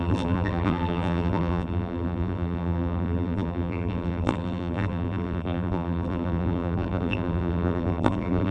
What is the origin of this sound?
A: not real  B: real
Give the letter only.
A